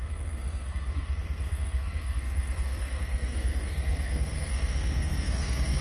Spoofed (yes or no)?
yes